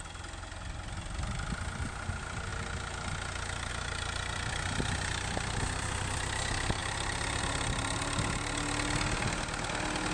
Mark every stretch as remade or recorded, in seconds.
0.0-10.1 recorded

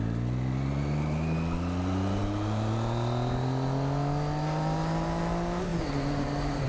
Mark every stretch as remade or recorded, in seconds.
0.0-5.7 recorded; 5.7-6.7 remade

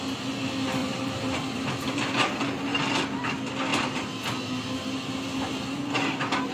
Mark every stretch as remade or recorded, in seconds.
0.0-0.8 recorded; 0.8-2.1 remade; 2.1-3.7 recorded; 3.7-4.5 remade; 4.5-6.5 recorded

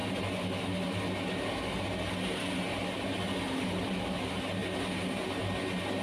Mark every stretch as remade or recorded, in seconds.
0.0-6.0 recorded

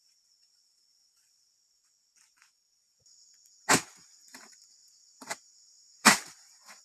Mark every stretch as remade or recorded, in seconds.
0.0-4.3 recorded; 4.3-6.3 remade; 6.3-6.8 recorded